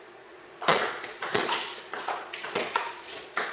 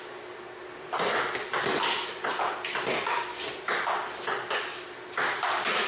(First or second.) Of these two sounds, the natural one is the second